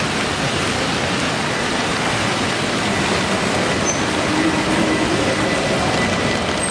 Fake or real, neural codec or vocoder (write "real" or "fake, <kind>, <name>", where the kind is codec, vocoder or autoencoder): fake, vocoder, BigVGAN v2